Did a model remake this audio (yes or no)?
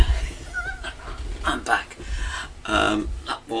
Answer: no